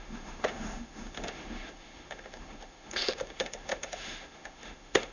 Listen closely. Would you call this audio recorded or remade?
remade